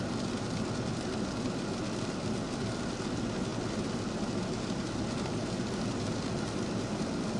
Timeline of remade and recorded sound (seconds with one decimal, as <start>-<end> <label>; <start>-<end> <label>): 0.0-7.4 recorded